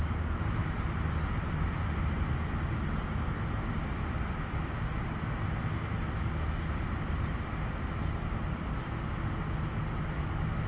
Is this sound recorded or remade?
recorded